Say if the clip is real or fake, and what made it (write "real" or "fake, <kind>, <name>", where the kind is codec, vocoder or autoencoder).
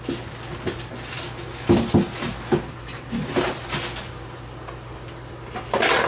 real